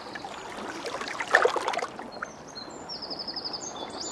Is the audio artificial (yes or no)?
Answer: no